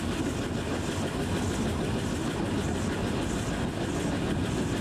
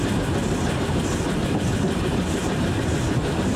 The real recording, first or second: first